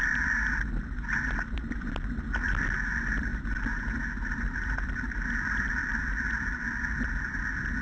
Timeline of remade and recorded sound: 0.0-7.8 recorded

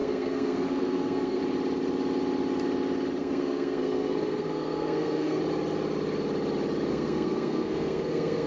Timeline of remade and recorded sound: 0.0-1.4 remade; 1.4-3.2 recorded; 3.2-5.4 remade; 5.4-6.9 recorded; 6.9-8.5 remade

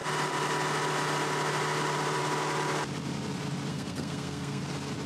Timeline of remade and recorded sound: 0.0-3.7 recorded; 3.7-4.6 remade; 4.6-5.1 recorded

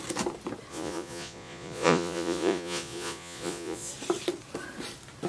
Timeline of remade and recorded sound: 0.0-0.7 recorded; 0.7-3.9 remade; 3.9-5.3 recorded

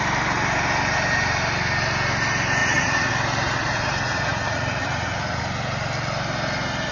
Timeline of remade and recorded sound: 0.0-2.6 recorded; 2.6-3.1 remade; 3.1-3.6 recorded; 3.6-5.4 remade; 5.4-6.9 recorded